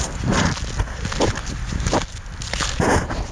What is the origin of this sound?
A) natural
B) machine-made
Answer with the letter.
A